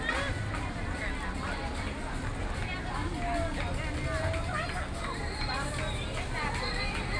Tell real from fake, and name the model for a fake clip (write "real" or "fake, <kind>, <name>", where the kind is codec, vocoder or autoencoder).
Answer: real